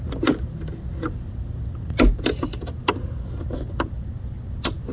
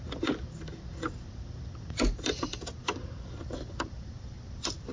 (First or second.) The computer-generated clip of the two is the second